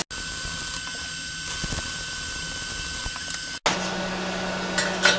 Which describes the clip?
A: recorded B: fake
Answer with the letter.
A